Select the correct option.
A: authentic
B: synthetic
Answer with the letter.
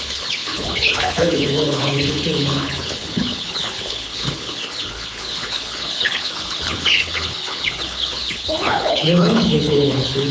B